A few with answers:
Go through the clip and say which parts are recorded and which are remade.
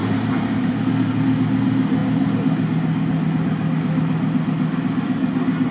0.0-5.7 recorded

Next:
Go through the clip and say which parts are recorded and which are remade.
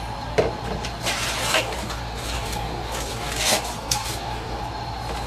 0.0-1.4 recorded; 1.4-4.6 remade; 4.6-5.3 recorded